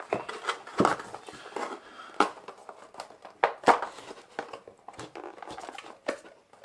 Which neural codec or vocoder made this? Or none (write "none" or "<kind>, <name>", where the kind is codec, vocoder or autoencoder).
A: none